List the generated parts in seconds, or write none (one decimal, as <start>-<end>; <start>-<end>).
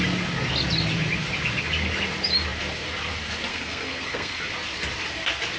3.5-4.4